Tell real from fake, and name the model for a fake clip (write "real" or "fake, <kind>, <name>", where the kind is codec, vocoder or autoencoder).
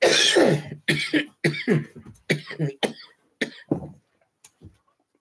real